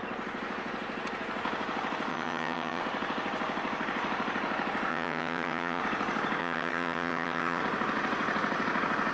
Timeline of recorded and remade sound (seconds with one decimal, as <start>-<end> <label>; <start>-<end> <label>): 0.0-2.1 recorded; 2.1-2.8 remade; 2.8-4.9 recorded; 4.9-5.8 remade; 5.8-6.4 recorded; 6.4-7.6 remade; 7.6-9.1 recorded